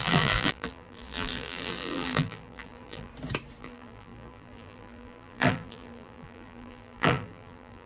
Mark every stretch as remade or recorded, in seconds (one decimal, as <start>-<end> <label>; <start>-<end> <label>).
0.0-3.1 remade; 3.1-3.6 recorded; 3.6-7.9 remade